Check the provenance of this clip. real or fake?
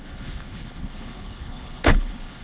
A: fake